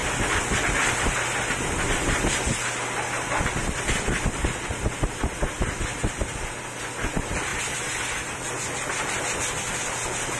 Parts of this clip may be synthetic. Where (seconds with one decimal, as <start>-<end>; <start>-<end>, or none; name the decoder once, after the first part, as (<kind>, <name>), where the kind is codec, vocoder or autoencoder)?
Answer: 3.6-4.2 (vocoder, BigVGAN v2)